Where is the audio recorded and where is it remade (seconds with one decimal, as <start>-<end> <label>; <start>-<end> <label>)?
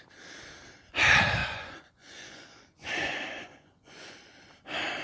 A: 0.0-1.4 recorded; 1.4-4.3 remade; 4.3-5.0 recorded